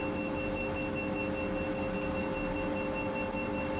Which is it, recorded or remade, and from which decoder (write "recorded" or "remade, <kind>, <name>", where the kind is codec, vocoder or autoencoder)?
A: recorded